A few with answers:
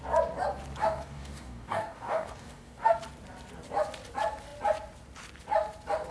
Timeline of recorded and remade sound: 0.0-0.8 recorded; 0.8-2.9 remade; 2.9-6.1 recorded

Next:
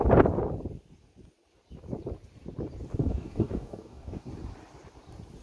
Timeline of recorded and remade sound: 0.0-3.0 recorded; 3.0-4.3 remade; 4.3-5.4 recorded